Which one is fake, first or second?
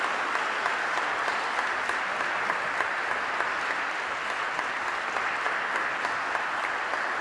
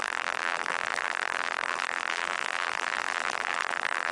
second